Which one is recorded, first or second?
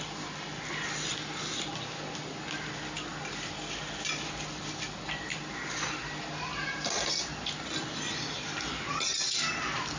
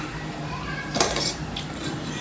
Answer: first